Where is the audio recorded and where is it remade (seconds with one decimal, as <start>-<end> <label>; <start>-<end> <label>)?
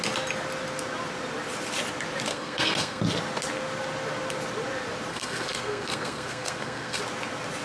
0.0-2.3 recorded; 2.3-3.0 remade; 3.0-5.1 recorded; 5.1-7.0 remade; 7.0-7.6 recorded